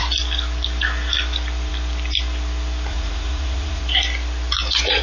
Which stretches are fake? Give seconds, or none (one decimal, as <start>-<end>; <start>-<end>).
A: 2.9-3.8